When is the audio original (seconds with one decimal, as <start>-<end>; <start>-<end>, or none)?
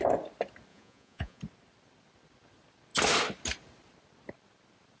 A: 0.0-0.7; 1.4-5.0